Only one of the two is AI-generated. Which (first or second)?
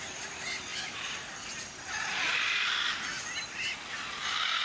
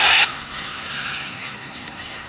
second